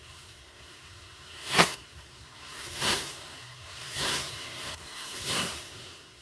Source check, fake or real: fake